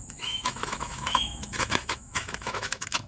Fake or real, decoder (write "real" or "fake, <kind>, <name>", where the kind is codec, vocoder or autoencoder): fake, autoencoder, DAC-VAE